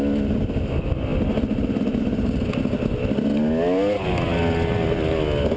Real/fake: real